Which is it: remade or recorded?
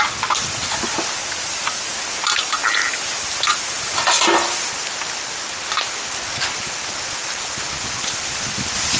recorded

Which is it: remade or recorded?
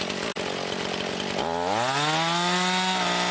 recorded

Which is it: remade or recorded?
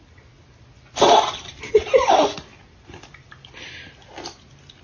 recorded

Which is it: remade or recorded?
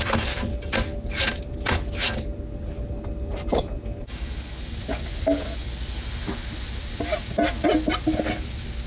recorded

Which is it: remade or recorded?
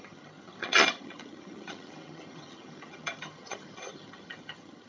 remade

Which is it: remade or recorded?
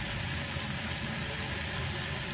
recorded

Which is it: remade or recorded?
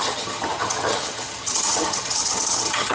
remade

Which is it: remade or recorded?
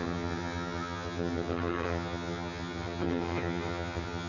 remade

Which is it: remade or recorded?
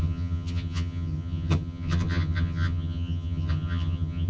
remade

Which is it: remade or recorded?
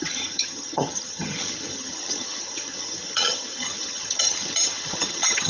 remade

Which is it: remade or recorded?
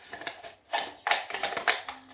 recorded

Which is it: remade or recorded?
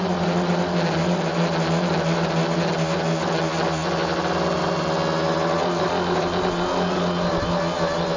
recorded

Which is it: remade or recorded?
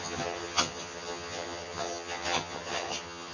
remade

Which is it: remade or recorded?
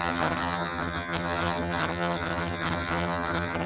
remade